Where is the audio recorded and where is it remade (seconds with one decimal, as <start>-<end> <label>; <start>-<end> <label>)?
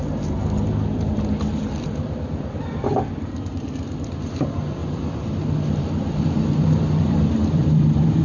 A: 0.0-1.5 recorded; 1.5-3.6 remade; 3.6-4.8 recorded; 4.8-8.2 remade